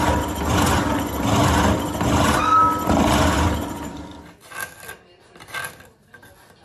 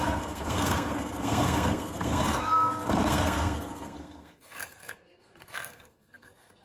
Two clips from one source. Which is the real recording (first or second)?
first